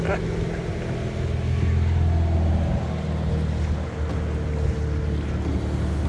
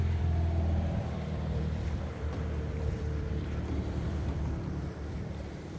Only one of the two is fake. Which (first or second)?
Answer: second